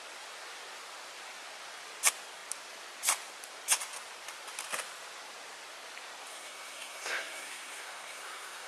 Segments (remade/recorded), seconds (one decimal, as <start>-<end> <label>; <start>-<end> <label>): 0.0-6.3 recorded; 6.3-8.7 remade